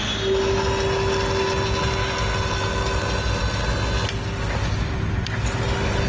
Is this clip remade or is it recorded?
recorded